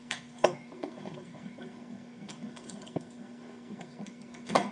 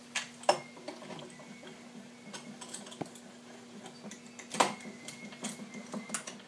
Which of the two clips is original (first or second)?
second